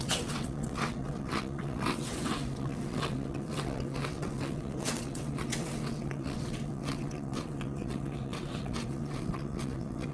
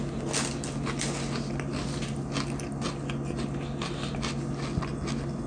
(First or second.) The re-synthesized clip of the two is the first